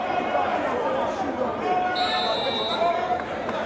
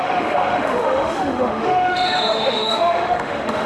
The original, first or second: first